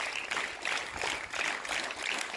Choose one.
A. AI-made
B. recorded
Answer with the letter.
B